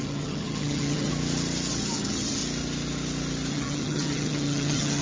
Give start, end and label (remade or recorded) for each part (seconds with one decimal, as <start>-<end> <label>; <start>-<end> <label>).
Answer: 0.0-1.1 remade; 1.1-1.7 recorded; 1.7-2.4 remade; 2.4-3.5 recorded; 3.5-5.0 remade

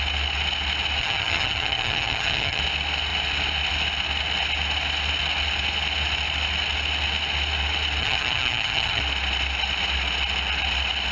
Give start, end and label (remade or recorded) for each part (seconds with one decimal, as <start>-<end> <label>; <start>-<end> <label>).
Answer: 0.0-1.0 recorded; 1.0-2.6 remade; 2.6-8.0 recorded; 8.0-9.0 remade; 9.0-11.1 recorded

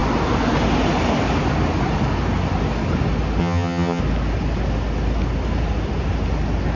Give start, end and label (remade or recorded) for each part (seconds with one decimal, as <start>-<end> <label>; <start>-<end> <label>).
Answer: 0.0-3.4 recorded; 3.4-4.0 remade; 4.0-6.8 recorded